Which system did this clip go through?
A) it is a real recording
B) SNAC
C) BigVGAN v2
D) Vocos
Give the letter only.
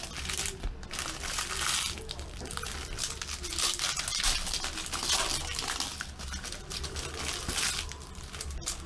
A